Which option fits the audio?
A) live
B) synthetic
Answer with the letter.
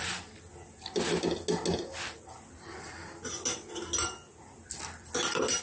A